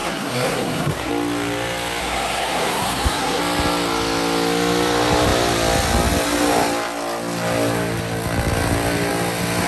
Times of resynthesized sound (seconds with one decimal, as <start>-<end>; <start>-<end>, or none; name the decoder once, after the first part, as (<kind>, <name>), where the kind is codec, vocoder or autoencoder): 0.0-1.1 (codec, SNAC); 2.0-3.4

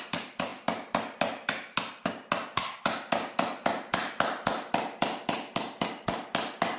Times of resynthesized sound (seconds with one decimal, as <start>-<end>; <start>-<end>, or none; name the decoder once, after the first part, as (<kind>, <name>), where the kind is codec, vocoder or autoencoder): none

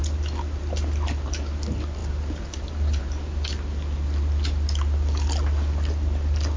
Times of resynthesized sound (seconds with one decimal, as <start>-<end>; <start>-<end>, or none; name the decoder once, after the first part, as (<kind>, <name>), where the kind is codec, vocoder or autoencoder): none

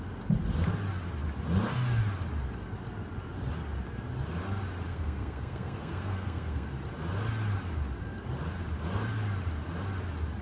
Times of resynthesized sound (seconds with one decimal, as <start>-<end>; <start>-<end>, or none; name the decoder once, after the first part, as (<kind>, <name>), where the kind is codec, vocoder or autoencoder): 4.9-6.7 (codec, SNAC)

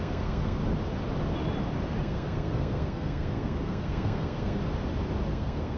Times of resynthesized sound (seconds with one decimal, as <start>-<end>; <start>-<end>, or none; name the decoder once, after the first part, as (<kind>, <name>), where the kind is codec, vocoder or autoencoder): 0.0-0.6 (codec, SNAC); 2.0-4.6; 5.3-5.8

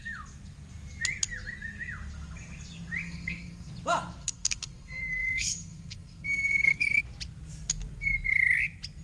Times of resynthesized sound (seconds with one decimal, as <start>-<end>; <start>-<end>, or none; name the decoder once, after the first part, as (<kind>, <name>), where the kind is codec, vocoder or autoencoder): 3.0-3.7 (codec, SNAC); 4.2-7.0

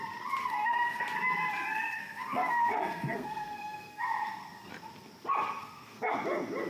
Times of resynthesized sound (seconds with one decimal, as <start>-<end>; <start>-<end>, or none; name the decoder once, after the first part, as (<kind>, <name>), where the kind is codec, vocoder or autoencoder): 0.4-1.0 (codec, SNAC); 1.7-4.7; 5.6-6.1